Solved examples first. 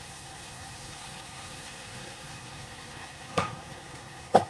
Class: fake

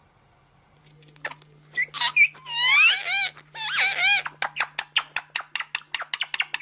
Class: real